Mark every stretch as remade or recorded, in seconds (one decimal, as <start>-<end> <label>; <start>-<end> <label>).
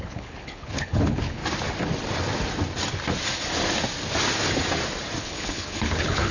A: 0.0-1.4 remade; 1.4-5.2 recorded; 5.2-6.3 remade